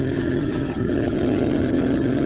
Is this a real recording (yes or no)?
no